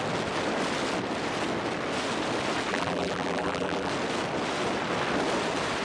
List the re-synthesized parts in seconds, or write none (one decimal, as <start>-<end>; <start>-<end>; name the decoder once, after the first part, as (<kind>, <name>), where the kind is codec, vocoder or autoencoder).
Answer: 2.7-3.9 (vocoder, BigVGAN v2)